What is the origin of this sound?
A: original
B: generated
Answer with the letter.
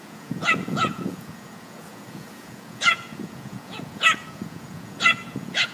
B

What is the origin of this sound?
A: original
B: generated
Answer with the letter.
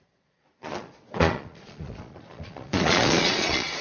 B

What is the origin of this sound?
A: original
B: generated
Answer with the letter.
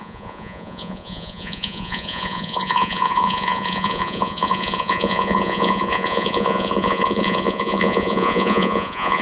B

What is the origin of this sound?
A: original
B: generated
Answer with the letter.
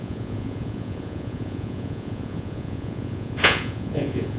B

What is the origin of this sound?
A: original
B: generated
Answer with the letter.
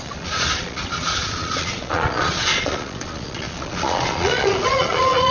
B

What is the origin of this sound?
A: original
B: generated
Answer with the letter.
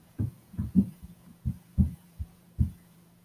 B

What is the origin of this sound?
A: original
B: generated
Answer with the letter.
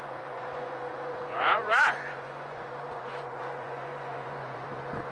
B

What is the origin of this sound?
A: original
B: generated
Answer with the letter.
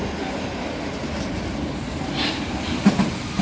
A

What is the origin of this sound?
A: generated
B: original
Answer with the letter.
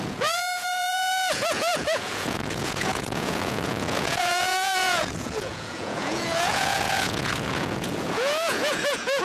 A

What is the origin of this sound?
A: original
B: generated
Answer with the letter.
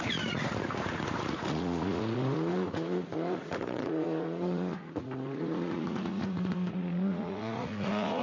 B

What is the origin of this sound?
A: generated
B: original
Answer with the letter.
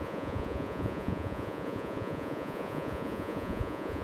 A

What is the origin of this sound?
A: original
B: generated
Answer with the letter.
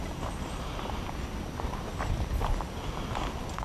A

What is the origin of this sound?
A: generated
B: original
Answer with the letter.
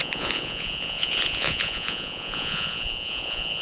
A